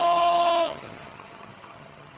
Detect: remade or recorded remade